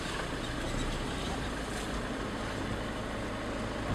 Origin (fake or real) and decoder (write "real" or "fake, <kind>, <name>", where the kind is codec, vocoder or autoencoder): real